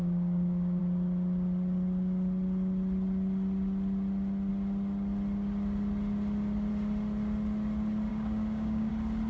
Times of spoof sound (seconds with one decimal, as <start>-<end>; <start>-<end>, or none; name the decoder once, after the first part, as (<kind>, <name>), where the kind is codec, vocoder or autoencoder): 0.0-0.8 (codec, DAC); 8.1-8.9